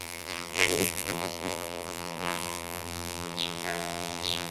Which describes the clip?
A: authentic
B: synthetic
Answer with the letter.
B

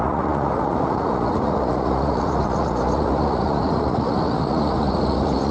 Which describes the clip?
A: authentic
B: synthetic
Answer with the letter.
B